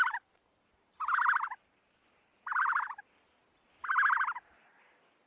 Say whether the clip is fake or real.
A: real